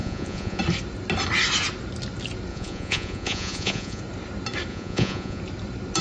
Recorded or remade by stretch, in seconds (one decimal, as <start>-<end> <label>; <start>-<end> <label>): 0.0-0.6 remade; 0.6-2.5 recorded; 2.5-4.0 remade; 4.0-4.7 recorded; 4.7-5.4 remade; 5.4-6.0 recorded